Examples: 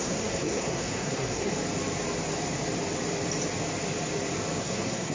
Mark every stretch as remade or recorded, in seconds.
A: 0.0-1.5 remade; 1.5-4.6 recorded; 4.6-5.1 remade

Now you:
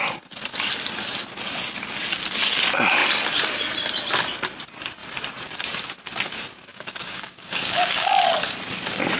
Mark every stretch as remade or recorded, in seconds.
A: 0.0-6.7 recorded; 6.7-8.2 remade; 8.2-9.2 recorded

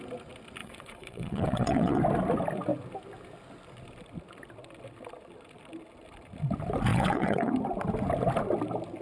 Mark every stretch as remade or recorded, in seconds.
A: 0.0-0.6 recorded; 0.6-2.0 remade; 2.0-6.9 recorded; 6.9-7.5 remade; 7.5-9.0 recorded

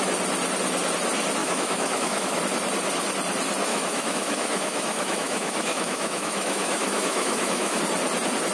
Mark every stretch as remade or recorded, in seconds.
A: 0.0-1.4 recorded; 1.4-2.4 remade; 2.4-3.7 recorded; 3.7-7.8 remade; 7.8-8.5 recorded

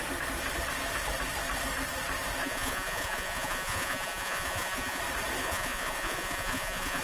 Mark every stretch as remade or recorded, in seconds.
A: 0.0-2.4 recorded; 2.4-5.0 remade; 5.0-5.4 recorded; 5.4-7.0 remade

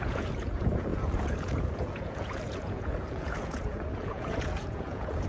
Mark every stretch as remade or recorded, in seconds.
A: 0.0-5.3 remade

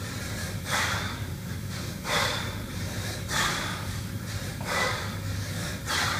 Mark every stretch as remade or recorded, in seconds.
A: 0.0-0.4 recorded; 0.4-4.1 remade; 4.1-4.5 recorded; 4.5-5.8 remade; 5.8-6.2 recorded

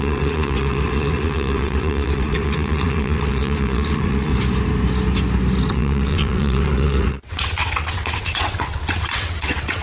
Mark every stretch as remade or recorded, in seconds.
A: 0.0-4.3 remade; 4.3-5.7 recorded; 5.7-9.8 remade